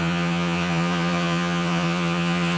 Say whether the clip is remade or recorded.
remade